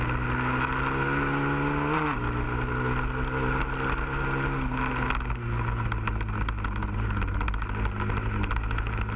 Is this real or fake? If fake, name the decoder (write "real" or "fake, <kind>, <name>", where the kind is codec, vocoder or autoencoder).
real